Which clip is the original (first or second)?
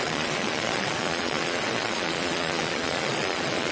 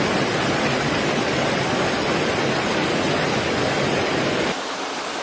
second